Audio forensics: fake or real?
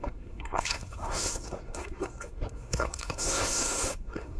fake